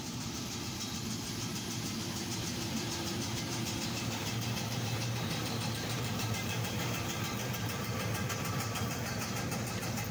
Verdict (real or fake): fake